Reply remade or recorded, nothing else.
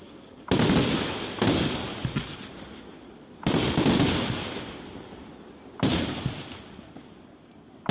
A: recorded